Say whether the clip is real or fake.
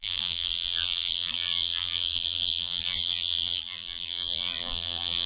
fake